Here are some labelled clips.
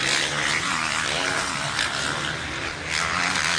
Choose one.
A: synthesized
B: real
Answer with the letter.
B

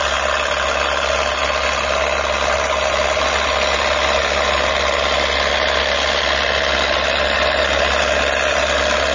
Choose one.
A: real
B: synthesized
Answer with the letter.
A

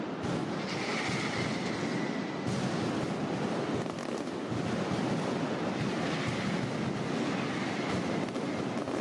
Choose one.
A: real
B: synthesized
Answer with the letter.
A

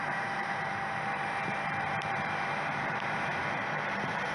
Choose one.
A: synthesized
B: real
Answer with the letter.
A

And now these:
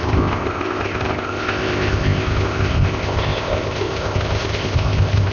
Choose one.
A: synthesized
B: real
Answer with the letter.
A